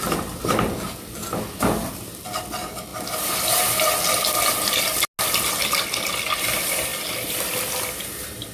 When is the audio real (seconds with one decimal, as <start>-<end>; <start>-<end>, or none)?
0.0-8.5